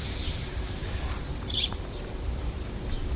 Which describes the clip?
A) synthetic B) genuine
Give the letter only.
A